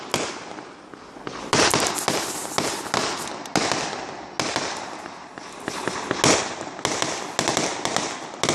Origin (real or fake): real